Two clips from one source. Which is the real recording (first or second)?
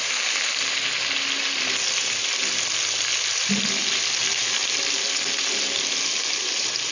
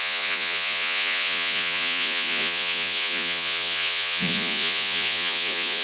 first